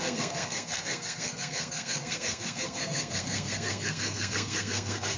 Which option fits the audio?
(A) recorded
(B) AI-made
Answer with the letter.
B